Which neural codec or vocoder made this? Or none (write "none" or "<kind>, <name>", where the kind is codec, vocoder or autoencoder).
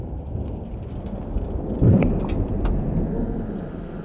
none